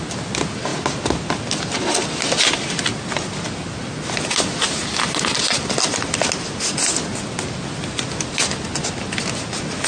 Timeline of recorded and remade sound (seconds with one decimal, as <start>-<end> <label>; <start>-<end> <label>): 0.0-9.9 recorded